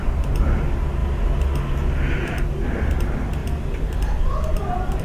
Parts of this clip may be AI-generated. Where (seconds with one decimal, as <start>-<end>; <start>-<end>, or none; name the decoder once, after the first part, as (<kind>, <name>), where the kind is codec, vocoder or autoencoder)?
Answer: none